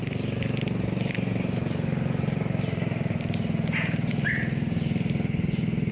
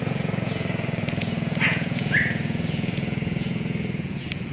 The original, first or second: first